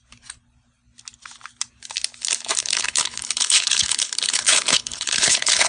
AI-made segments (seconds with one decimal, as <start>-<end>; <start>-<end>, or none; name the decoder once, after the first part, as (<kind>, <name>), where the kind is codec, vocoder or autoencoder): 2.6-5.7 (codec, HILCodec)

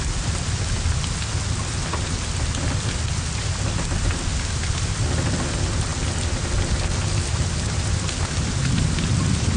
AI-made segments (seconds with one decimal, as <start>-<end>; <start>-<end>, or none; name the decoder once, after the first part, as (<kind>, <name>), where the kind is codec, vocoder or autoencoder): none

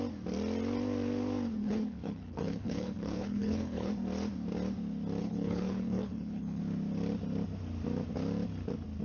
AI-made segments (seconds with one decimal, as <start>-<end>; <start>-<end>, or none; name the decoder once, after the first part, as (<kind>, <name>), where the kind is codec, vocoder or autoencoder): 1.6-3.9 (codec, HILCodec); 5.2-6.6

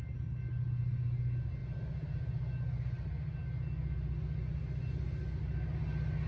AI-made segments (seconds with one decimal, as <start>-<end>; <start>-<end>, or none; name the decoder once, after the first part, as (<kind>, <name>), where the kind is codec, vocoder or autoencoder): none

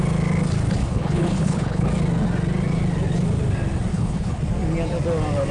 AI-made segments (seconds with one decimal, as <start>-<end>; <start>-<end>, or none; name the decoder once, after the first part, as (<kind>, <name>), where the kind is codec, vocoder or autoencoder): 0.8-1.9 (codec, HILCodec); 3.9-4.4